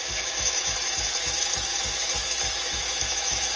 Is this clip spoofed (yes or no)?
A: yes